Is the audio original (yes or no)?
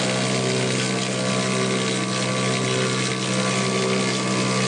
yes